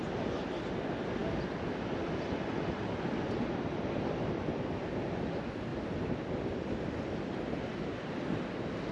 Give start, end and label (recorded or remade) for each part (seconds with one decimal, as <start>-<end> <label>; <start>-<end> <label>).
0.0-8.9 recorded